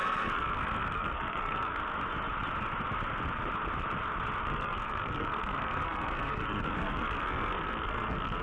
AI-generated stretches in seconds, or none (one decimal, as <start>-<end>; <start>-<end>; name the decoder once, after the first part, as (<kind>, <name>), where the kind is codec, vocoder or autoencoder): 0.0-1.8 (codec, SNAC); 4.4-8.4